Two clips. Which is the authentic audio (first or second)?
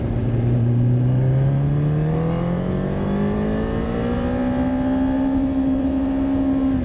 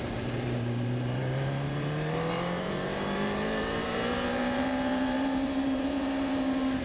first